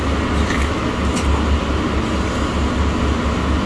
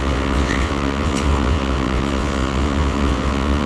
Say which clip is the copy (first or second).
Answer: second